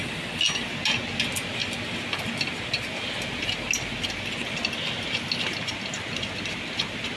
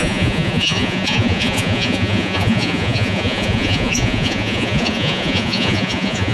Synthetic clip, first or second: second